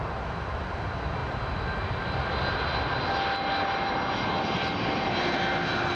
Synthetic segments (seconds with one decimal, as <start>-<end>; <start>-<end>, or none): none